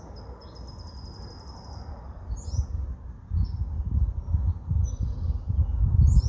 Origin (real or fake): real